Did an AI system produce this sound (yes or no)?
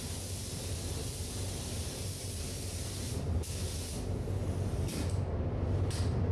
no